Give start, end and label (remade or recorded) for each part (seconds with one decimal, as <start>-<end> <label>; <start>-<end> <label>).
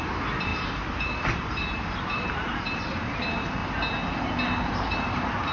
0.0-3.6 remade; 3.6-4.7 recorded; 4.7-5.5 remade